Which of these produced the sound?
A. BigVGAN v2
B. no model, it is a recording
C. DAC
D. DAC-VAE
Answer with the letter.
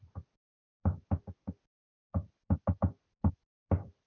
A